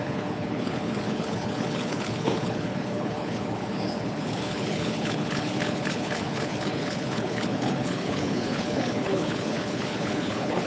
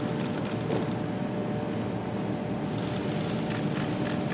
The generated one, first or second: first